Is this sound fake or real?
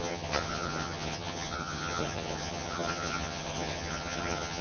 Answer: fake